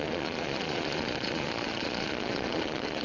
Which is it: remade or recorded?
remade